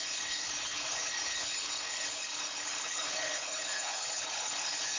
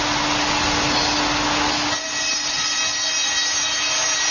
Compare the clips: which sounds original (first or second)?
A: second